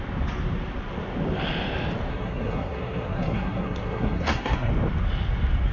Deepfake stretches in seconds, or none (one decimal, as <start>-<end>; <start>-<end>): 2.1-4.7